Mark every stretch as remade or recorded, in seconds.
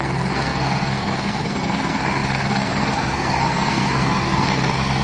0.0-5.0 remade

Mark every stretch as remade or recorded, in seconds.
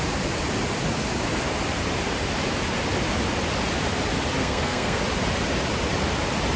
0.0-4.4 recorded; 4.4-5.0 remade; 5.0-6.6 recorded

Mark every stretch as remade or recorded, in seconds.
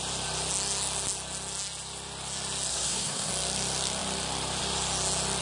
0.0-2.7 recorded; 2.7-3.3 remade; 3.3-5.4 recorded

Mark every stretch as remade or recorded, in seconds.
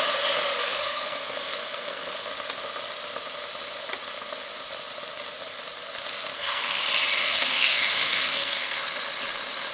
0.0-0.6 recorded; 0.6-2.3 remade; 2.3-6.3 recorded; 6.3-6.8 remade; 6.8-7.2 recorded; 7.2-8.8 remade; 8.8-9.7 recorded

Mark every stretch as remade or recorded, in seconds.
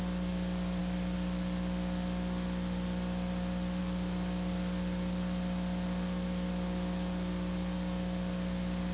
0.0-8.9 recorded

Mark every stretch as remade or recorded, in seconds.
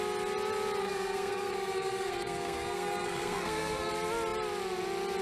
0.0-0.8 recorded; 0.8-3.9 remade; 3.9-5.2 recorded